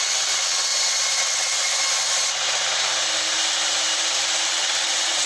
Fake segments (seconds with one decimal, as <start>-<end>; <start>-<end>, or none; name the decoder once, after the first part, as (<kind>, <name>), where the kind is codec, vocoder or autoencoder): 0.0-0.7 (vocoder, WaveNeXt); 1.2-1.6; 4.5-5.3